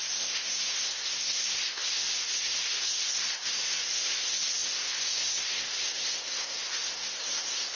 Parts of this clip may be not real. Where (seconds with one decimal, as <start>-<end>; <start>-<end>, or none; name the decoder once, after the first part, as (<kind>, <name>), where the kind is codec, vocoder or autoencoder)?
0.0-7.8 (codec, SNAC)